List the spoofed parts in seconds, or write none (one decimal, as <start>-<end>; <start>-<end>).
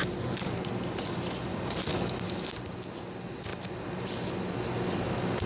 none